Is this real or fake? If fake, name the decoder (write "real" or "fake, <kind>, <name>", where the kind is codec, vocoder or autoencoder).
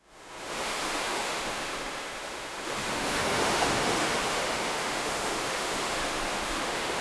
fake, autoencoder, DAC-VAE